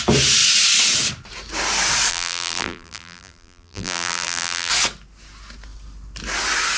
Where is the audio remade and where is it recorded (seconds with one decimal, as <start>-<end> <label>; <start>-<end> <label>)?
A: 0.0-2.1 recorded; 2.1-4.7 remade; 4.7-6.8 recorded